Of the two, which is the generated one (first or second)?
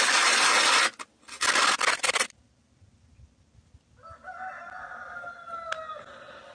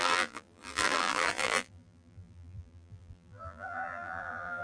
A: second